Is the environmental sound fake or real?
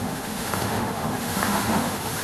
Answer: fake